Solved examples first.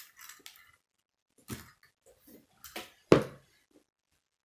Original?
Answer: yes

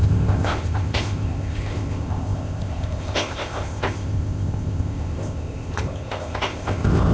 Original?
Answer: no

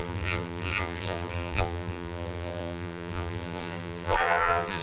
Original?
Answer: no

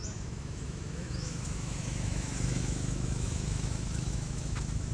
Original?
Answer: no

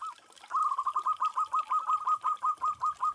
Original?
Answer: yes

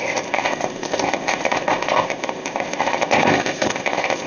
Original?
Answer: no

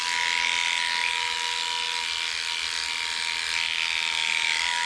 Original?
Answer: yes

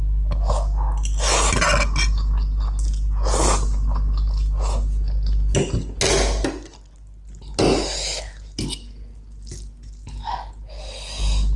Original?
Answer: yes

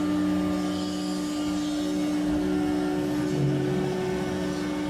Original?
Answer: yes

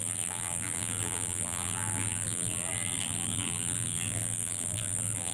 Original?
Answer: no